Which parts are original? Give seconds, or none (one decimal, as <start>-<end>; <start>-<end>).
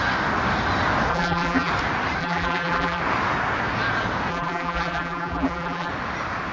0.0-1.1; 1.7-2.2; 3.0-4.3; 5.9-6.5